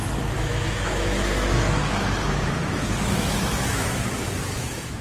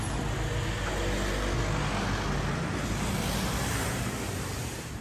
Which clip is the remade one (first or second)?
first